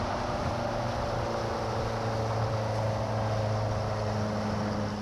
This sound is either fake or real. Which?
real